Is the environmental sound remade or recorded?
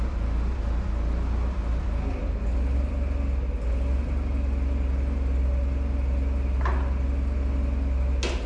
recorded